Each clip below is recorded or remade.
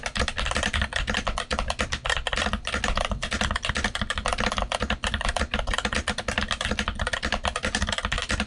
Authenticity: recorded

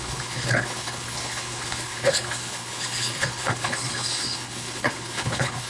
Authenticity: remade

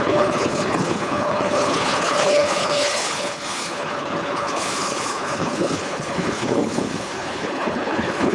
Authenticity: remade